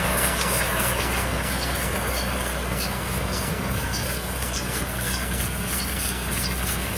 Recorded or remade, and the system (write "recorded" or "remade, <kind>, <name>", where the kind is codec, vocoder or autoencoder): remade, codec, SNAC